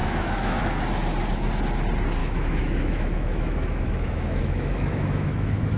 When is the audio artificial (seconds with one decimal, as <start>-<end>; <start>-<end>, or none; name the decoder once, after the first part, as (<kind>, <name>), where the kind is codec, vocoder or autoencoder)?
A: 0.0-0.6 (autoencoder, DAC-VAE); 2.2-5.8